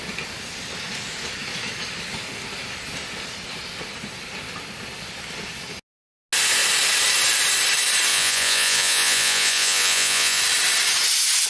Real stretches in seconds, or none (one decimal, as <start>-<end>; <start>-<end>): 0.0-8.1; 10.4-11.5